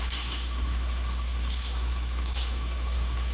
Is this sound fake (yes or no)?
yes